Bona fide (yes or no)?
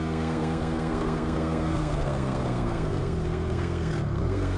no